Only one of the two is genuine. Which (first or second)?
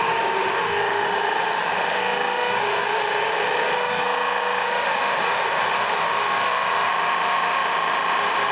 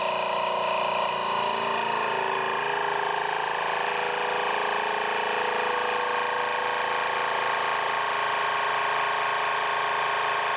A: second